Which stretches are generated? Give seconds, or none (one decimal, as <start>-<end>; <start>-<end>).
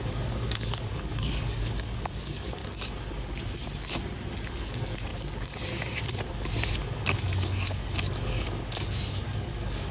0.0-2.6; 4.5-5.1; 6.3-9.9